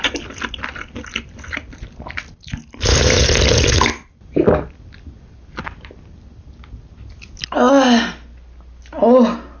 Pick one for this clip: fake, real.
real